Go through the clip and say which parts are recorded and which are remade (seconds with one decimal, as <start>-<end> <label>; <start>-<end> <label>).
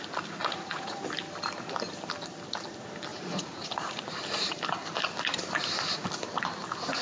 0.0-0.4 recorded; 0.4-1.0 remade; 1.0-3.1 recorded; 3.1-4.0 remade; 4.0-7.0 recorded